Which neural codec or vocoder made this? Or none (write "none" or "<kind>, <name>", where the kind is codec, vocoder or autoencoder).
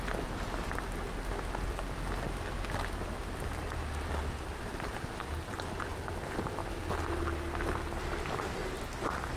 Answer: none